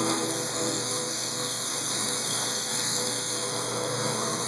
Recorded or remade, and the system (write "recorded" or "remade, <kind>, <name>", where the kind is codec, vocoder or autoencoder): remade, codec, SNAC